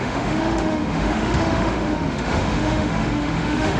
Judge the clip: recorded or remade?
remade